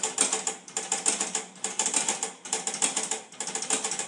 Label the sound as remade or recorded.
recorded